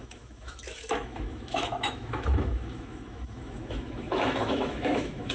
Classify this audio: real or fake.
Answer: fake